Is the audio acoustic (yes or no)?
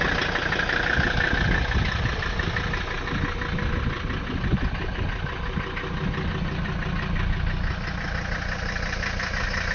yes